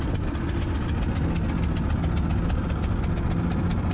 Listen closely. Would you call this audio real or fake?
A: real